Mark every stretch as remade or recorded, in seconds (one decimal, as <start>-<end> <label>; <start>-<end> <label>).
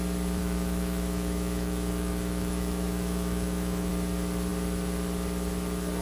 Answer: 0.0-0.4 recorded; 0.4-3.9 remade; 3.9-6.0 recorded